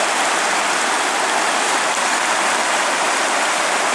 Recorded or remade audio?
recorded